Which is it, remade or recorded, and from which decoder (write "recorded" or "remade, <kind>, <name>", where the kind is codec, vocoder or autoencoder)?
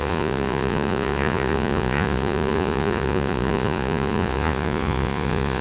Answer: remade, vocoder, Vocos